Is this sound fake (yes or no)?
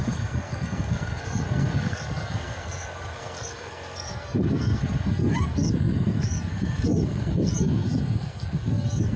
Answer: yes